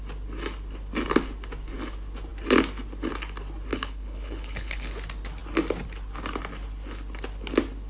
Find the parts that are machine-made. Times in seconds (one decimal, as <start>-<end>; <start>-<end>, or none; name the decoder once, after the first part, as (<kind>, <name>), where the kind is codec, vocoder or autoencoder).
3.7-4.9 (codec, HILCodec)